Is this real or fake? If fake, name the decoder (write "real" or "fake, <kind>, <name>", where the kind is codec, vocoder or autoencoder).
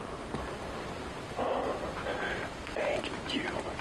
real